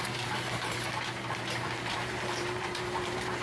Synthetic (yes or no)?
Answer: yes